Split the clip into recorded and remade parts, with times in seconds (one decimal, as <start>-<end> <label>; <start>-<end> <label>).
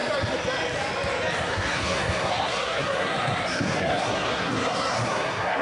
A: 0.0-1.4 recorded; 1.4-5.6 remade